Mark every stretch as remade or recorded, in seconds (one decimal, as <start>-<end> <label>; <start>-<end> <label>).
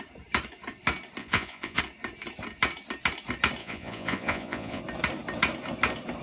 0.0-1.2 recorded; 1.2-1.8 remade; 1.8-3.6 recorded; 3.6-4.8 remade; 4.8-6.2 recorded